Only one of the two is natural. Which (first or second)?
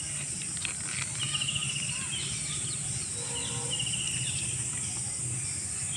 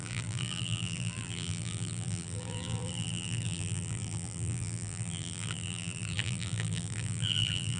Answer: first